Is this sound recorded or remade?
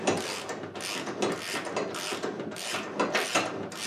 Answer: recorded